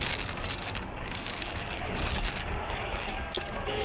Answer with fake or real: fake